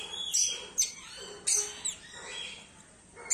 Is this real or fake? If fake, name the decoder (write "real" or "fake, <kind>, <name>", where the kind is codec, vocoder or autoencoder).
real